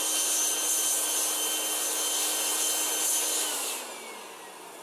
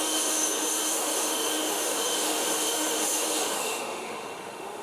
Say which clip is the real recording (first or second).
first